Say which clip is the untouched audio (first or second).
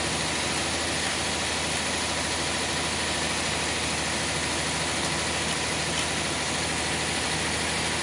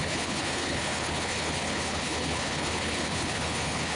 first